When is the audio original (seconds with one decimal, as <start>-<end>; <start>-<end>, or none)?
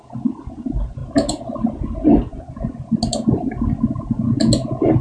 0.0-5.0